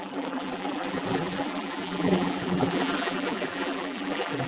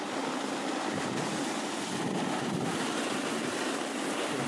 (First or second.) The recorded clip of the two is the second